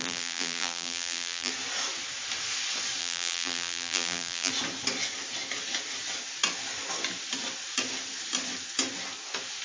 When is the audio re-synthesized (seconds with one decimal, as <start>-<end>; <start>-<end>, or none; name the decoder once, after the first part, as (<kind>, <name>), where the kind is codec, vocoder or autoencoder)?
0.0-1.5 (vocoder, BigVGAN v2); 3.0-4.5